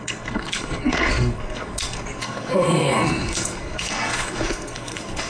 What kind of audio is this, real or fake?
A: fake